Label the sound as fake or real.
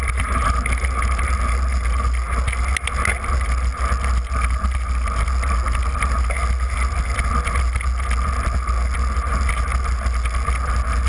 real